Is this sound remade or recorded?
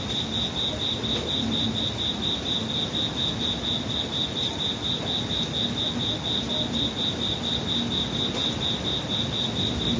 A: recorded